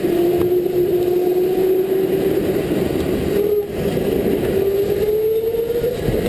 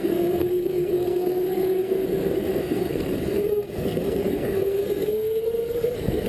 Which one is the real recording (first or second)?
first